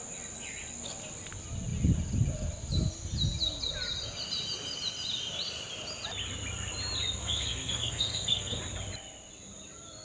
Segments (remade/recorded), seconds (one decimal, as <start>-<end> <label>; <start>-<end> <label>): 0.0-7.2 recorded; 7.2-8.6 remade; 8.6-10.0 recorded